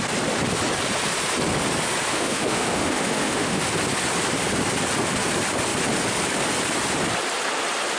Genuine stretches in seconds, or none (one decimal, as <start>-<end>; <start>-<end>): 0.0-2.1; 3.6-8.0